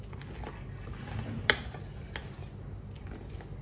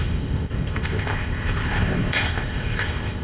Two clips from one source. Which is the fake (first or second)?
second